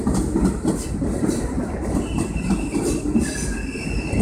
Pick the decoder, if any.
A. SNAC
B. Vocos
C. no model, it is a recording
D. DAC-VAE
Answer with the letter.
C